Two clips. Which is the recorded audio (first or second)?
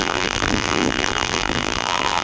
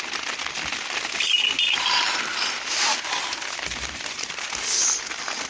second